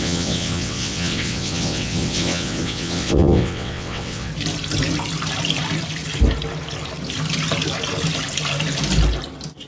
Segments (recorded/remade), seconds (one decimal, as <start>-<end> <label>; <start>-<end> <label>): 0.0-4.3 remade; 4.3-9.7 recorded

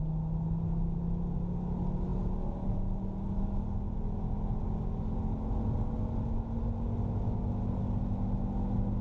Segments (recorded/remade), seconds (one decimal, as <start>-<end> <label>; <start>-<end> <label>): 0.0-9.0 recorded

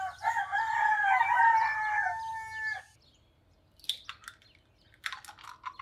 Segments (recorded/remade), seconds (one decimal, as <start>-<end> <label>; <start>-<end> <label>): 0.0-5.8 recorded

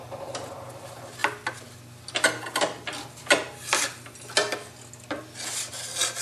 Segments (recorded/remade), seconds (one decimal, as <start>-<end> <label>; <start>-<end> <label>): 0.0-6.2 recorded

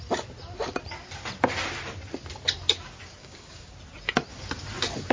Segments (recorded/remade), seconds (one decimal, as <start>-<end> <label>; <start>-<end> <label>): 0.0-3.2 recorded; 3.2-3.7 remade; 3.7-5.1 recorded

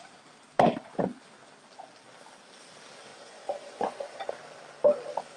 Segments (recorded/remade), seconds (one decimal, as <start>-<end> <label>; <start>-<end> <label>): 0.0-3.1 recorded; 3.1-4.3 remade; 4.3-5.4 recorded

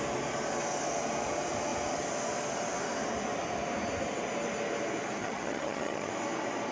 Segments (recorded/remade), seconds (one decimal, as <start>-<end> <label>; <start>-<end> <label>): 0.0-5.2 recorded; 5.2-6.1 remade; 6.1-6.7 recorded